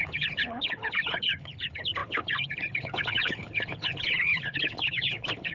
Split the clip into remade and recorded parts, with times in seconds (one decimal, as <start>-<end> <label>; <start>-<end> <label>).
0.0-5.5 remade